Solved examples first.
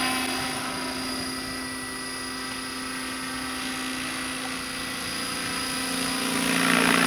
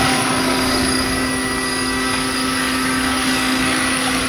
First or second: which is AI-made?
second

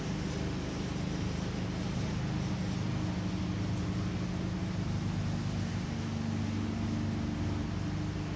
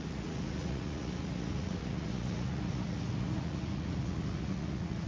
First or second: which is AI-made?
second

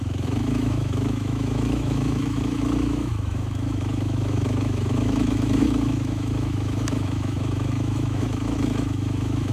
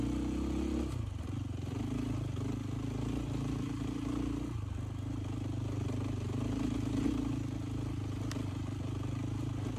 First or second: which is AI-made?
first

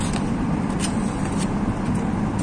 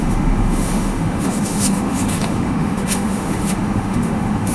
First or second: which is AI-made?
second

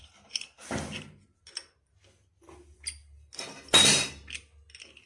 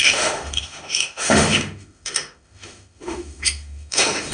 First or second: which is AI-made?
second